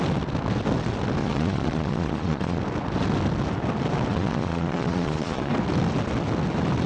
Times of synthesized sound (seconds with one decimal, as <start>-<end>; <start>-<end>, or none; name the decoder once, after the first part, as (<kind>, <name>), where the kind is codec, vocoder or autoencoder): 1.2-2.6 (vocoder, Vocos); 4.1-5.5